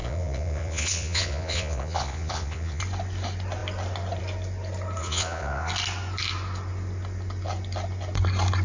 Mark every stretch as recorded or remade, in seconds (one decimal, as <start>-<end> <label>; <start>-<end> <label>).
0.0-2.8 remade; 2.8-5.0 recorded; 5.0-5.7 remade; 5.7-8.6 recorded